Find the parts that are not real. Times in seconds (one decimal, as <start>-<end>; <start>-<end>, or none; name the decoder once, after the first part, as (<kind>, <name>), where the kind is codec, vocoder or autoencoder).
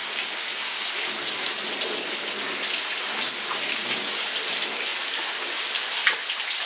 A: 0.0-0.9 (codec, DAC); 3.7-4.2